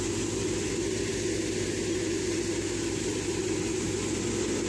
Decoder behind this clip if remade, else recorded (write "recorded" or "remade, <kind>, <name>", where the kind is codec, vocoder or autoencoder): recorded